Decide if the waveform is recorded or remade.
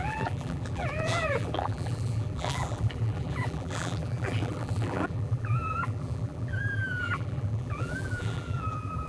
remade